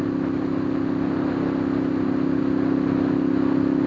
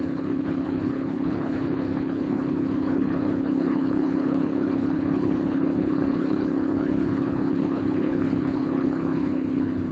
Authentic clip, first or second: first